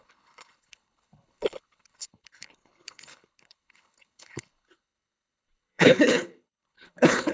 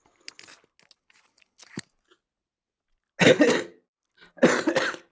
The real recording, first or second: second